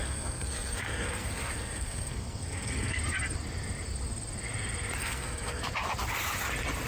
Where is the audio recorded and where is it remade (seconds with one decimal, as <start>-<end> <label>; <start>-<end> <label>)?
0.0-3.0 remade; 3.0-5.0 recorded; 5.0-5.6 remade; 5.6-6.9 recorded

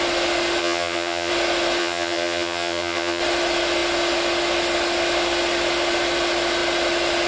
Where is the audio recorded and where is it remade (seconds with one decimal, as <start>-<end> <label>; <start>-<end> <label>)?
0.0-0.6 recorded; 0.6-1.3 remade; 1.3-1.8 recorded; 1.8-3.2 remade; 3.2-7.3 recorded